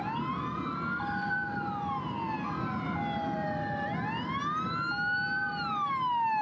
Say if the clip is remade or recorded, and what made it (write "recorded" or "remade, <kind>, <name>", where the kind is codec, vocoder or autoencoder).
recorded